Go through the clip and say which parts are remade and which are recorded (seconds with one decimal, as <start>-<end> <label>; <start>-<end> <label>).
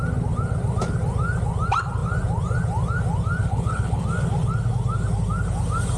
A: 0.0-3.4 recorded; 3.4-4.0 remade; 4.0-6.0 recorded